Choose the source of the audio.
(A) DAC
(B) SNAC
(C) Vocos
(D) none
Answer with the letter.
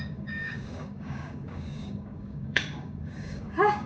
A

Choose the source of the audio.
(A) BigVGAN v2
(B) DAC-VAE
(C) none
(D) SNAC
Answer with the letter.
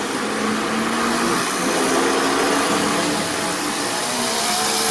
C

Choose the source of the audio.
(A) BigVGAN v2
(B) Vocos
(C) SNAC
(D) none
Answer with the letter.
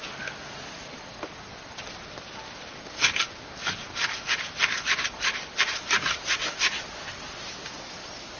D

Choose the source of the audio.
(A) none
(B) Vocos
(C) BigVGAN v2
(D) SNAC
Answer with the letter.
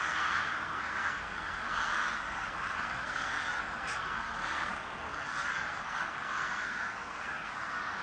D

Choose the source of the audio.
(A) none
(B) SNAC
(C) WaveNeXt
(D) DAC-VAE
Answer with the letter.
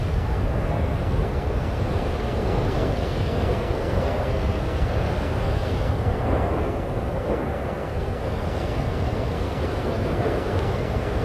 B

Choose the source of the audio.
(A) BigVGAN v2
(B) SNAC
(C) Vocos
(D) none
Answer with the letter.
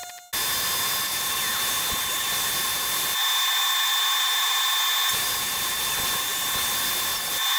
D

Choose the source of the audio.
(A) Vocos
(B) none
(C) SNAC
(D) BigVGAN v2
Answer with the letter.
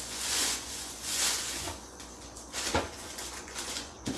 A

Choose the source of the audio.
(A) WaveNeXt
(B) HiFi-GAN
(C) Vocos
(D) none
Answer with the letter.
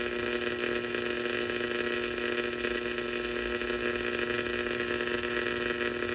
D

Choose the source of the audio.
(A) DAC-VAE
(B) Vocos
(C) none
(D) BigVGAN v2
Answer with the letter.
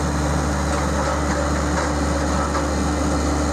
C